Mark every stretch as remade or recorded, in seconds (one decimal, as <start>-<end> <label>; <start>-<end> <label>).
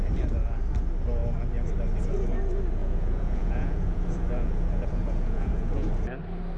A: 0.0-2.8 recorded; 2.8-5.9 remade; 5.9-6.6 recorded